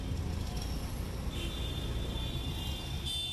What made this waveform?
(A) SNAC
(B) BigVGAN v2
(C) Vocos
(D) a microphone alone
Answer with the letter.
D